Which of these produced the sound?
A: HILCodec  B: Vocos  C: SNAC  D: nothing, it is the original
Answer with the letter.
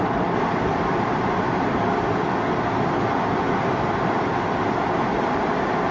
D